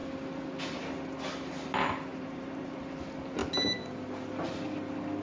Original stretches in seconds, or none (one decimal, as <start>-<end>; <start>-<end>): 0.0-2.1; 2.8-5.2